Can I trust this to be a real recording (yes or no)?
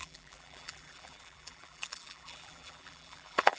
no